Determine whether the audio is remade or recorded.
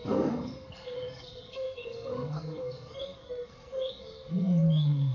remade